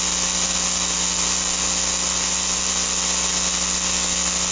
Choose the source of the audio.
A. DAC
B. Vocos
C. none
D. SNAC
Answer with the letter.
C